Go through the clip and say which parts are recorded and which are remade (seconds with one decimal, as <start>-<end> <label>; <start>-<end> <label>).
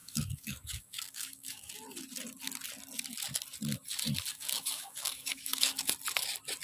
0.0-1.7 remade; 1.7-4.3 recorded; 4.3-5.9 remade; 5.9-6.6 recorded